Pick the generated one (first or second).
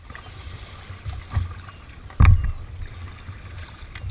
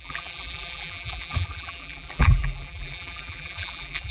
second